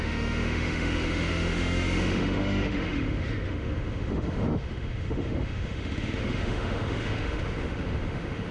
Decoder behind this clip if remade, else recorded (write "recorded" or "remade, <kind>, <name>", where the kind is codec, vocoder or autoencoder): remade, autoencoder, DAC-VAE